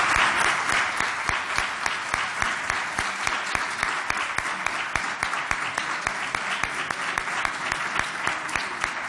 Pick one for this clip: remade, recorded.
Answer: recorded